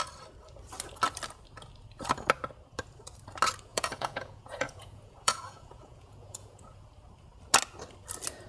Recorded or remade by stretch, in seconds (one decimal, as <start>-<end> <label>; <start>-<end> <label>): 0.0-3.7 recorded; 3.7-6.9 remade; 6.9-8.5 recorded